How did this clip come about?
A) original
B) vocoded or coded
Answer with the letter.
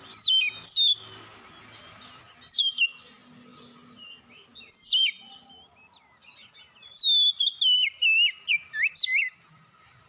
A